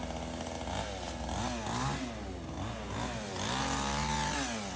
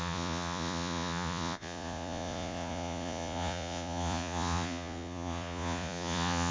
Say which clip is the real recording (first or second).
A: first